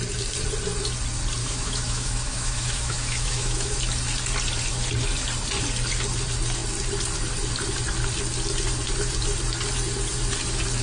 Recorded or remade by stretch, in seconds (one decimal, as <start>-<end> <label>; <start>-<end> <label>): 0.0-1.4 recorded; 1.4-3.8 remade; 3.8-10.8 recorded